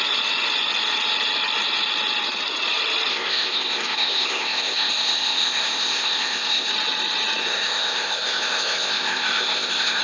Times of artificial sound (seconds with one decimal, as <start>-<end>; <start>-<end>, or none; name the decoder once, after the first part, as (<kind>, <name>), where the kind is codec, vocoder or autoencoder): 3.1-6.7 (codec, ZipCodec); 7.4-10.0